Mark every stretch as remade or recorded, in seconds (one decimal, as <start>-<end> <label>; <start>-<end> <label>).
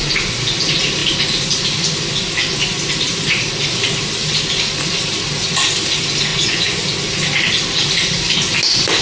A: 0.0-6.3 recorded; 6.3-6.8 remade; 6.8-9.0 recorded